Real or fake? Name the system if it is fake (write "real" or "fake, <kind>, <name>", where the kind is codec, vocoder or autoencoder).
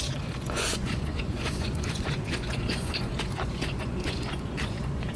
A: fake, vocoder, Vocos